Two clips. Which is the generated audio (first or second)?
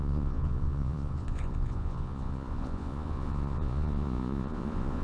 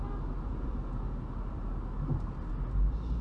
first